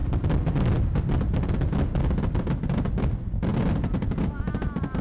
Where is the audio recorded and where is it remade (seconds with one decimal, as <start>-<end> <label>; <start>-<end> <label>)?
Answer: 0.0-5.0 recorded